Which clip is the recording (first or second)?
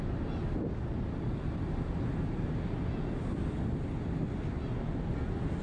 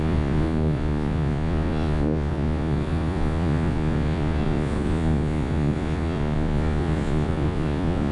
first